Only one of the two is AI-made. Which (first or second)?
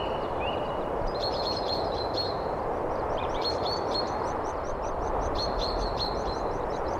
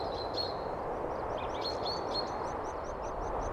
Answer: first